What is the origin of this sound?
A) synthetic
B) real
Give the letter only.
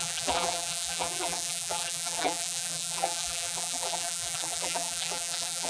A